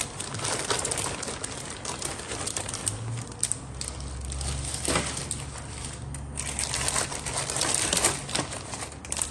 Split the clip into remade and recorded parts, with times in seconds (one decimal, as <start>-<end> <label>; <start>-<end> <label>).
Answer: 0.0-9.3 recorded